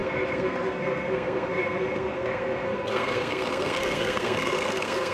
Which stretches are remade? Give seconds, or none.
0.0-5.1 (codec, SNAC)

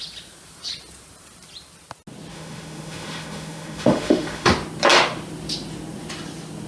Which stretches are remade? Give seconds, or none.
2.3-4.5 (autoencoder, DAC-VAE)

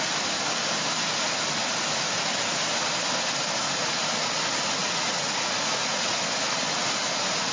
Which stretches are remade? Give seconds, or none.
4.8-6.2 (vocoder, Vocos)